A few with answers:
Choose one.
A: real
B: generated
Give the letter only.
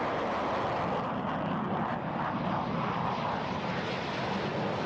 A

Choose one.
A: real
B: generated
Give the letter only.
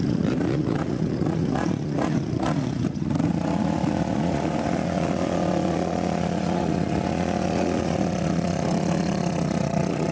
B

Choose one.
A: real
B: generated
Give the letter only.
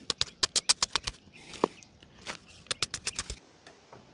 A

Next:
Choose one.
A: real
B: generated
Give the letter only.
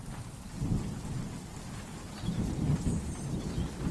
A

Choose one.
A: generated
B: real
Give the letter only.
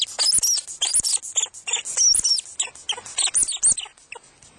B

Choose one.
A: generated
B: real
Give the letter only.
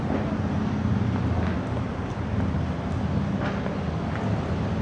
B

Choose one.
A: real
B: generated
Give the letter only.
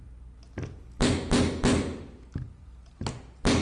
A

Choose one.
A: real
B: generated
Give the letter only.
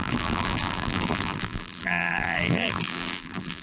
B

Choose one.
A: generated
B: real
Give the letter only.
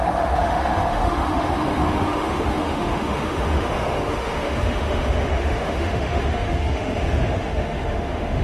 A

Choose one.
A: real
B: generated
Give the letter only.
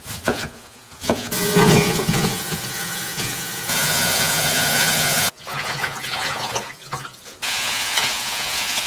B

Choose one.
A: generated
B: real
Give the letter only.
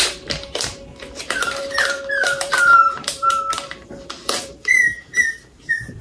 A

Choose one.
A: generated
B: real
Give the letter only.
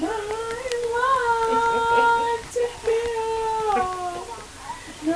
B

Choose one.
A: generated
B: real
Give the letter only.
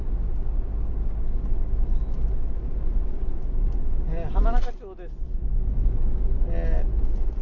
B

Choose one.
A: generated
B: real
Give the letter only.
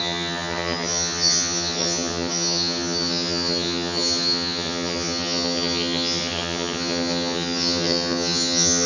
A